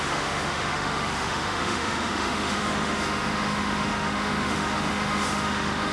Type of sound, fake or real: fake